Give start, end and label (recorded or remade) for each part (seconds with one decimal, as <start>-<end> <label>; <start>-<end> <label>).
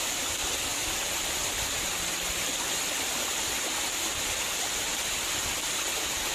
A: 0.0-6.3 recorded